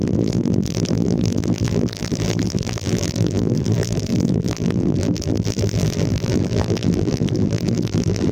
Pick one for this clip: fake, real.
fake